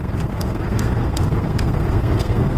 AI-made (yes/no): yes